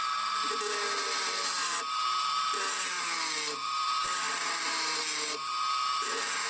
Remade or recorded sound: recorded